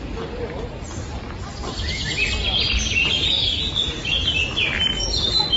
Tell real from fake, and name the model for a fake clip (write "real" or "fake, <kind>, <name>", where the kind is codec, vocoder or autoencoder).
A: real